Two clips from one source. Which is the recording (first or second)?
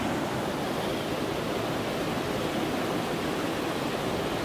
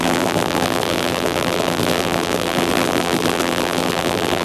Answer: first